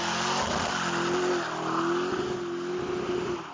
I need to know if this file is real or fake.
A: real